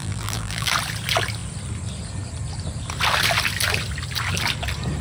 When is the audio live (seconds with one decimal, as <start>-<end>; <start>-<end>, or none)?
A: 0.7-5.0